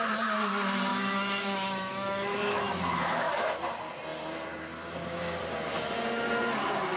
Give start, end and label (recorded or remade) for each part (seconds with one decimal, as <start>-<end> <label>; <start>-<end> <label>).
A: 0.0-0.9 recorded; 0.9-3.3 remade; 3.3-7.0 recorded